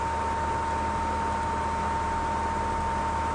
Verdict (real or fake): real